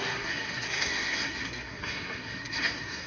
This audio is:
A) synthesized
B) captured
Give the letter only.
A